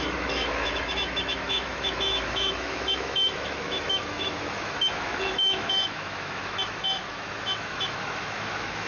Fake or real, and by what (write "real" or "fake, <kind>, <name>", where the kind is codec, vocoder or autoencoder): fake, autoencoder, DAC-VAE